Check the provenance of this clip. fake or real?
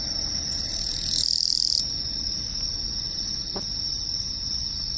real